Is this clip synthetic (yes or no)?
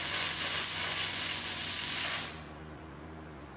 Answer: yes